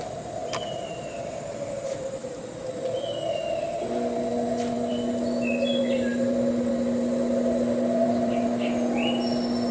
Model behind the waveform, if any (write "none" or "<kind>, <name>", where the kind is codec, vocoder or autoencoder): none